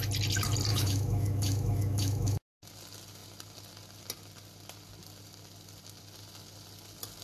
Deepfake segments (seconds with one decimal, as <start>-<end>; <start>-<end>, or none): 0.7-2.4